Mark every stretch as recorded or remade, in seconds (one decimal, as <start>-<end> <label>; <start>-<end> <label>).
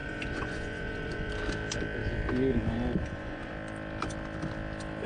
0.0-1.3 remade; 1.3-3.0 recorded; 3.0-3.5 remade; 3.5-5.1 recorded